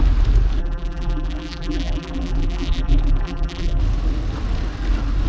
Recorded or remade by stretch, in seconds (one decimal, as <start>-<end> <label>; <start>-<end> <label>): 0.0-0.6 recorded; 0.6-3.8 remade; 3.8-5.3 recorded